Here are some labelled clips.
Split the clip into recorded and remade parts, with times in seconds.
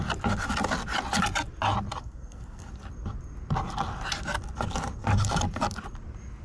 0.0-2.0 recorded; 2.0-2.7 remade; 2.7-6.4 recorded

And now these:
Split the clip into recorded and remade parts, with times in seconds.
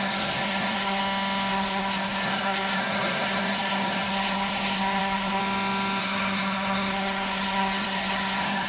0.0-1.0 remade; 1.0-1.5 recorded; 1.5-5.4 remade; 5.4-6.0 recorded; 6.0-8.7 remade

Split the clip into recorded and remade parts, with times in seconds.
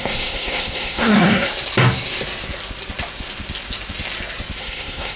0.0-1.5 remade; 1.5-4.6 recorded; 4.6-5.2 remade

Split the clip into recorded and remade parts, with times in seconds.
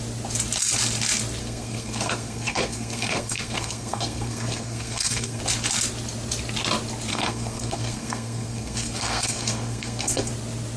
0.0-1.4 recorded; 1.4-5.4 remade; 5.4-7.1 recorded; 7.1-10.3 remade; 10.3-10.8 recorded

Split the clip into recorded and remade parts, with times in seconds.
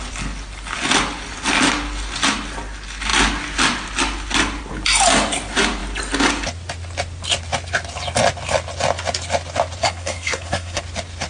0.0-9.8 recorded; 9.8-10.8 remade; 10.8-11.3 recorded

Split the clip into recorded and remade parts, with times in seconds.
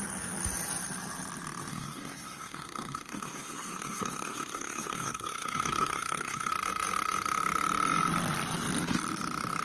0.0-1.7 recorded; 1.7-6.5 remade; 6.5-9.6 recorded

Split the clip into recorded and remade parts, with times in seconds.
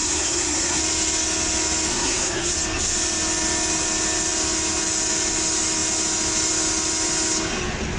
0.0-0.8 remade; 0.8-1.9 recorded; 1.9-2.5 remade; 2.5-8.0 recorded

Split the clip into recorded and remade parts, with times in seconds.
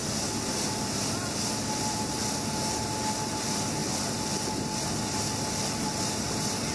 0.0-6.7 recorded